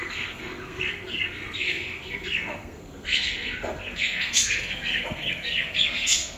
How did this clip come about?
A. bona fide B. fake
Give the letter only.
B